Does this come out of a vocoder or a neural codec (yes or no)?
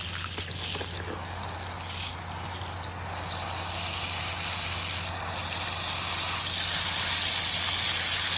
no